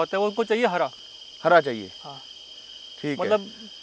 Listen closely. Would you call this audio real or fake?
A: real